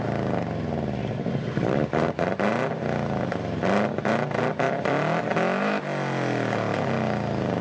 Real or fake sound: real